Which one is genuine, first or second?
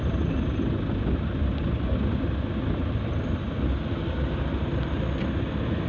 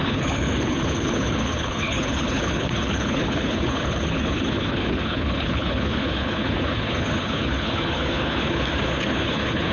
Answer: first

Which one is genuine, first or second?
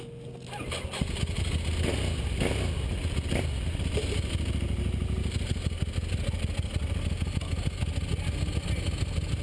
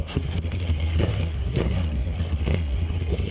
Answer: first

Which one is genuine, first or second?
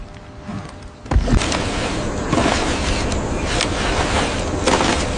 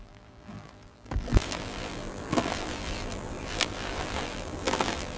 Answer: first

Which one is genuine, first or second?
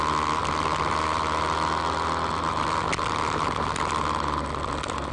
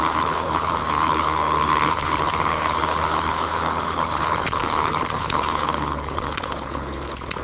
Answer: first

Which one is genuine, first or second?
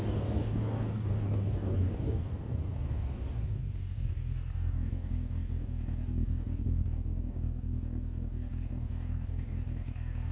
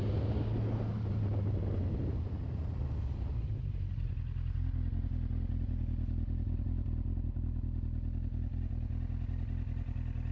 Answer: second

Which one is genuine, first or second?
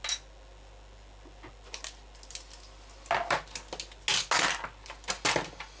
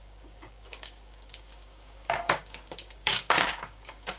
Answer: first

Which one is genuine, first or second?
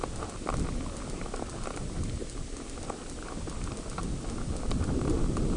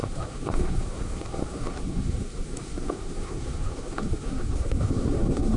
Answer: first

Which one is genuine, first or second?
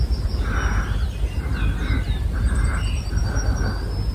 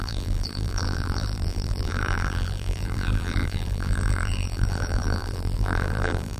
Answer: first